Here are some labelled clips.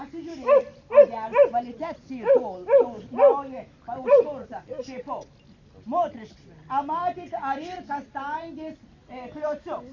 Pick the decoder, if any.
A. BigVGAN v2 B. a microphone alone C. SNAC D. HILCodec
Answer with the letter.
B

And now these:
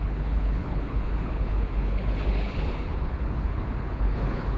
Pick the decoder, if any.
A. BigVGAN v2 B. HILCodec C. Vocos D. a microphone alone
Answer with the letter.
B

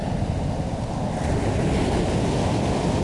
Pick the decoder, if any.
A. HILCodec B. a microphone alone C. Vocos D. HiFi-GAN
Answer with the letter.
B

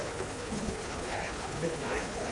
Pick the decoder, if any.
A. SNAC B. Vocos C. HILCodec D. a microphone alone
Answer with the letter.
C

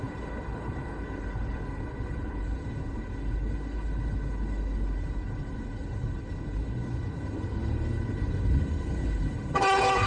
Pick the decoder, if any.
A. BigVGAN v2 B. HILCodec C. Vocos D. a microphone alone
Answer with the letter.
B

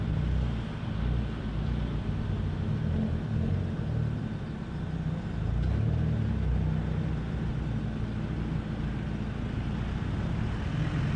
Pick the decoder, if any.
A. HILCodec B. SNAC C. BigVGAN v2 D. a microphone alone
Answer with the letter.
D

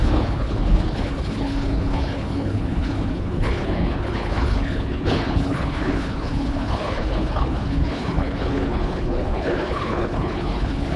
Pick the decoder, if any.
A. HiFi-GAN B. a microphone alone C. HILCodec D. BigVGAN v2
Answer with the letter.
C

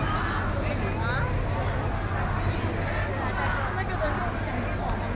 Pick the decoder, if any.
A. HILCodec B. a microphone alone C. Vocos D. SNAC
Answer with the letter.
B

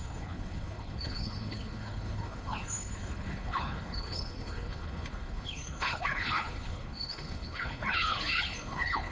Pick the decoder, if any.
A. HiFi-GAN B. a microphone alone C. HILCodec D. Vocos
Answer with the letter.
C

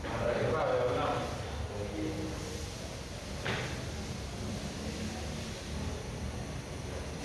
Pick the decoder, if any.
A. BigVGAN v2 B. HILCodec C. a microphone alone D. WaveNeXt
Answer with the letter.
C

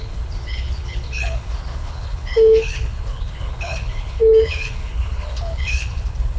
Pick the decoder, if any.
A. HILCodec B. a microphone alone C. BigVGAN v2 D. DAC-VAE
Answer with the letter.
A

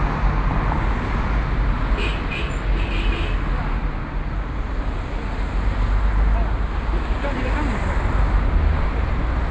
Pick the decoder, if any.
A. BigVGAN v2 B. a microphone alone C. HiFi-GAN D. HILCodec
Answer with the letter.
B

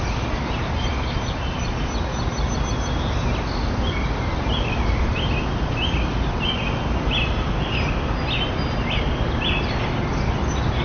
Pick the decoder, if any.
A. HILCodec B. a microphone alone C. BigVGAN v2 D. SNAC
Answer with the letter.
B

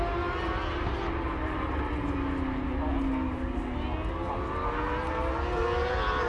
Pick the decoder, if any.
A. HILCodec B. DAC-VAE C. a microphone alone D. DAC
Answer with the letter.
C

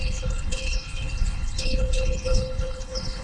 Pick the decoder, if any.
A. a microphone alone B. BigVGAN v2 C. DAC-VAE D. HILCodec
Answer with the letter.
D